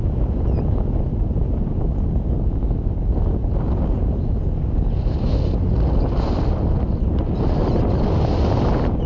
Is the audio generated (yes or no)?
no